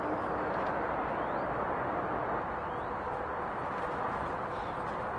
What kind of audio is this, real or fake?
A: real